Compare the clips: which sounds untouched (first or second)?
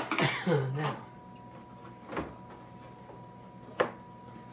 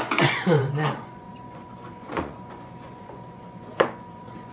first